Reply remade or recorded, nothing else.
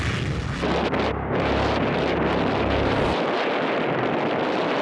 recorded